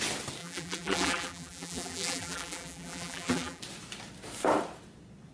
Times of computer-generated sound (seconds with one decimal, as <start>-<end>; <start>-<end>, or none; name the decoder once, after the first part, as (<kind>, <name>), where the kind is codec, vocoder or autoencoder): 0.4-3.6 (vocoder, BigVGAN v2)